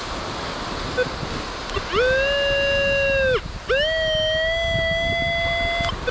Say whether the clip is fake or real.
real